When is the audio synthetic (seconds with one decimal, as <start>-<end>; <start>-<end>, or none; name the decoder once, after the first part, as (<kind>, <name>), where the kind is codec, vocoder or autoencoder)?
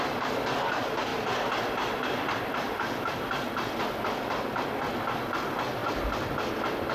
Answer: none